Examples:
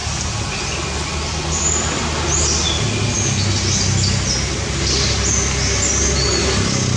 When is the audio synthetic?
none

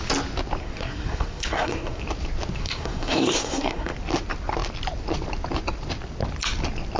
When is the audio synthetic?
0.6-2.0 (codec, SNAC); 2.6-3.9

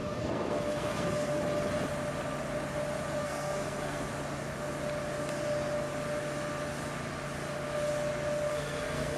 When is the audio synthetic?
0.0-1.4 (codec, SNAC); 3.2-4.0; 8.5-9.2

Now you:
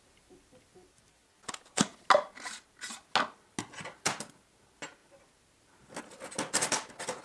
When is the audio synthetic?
none

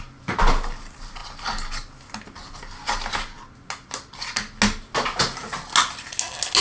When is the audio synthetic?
none

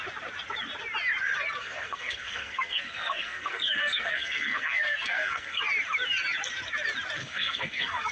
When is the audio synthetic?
1.6-5.6 (codec, SNAC); 7.2-8.1

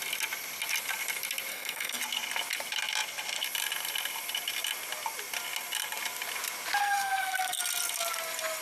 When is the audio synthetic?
1.5-2.0 (codec, SNAC); 6.8-7.6

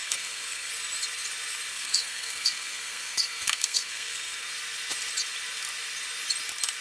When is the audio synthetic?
0.0-0.7 (codec, SNAC); 1.7-4.5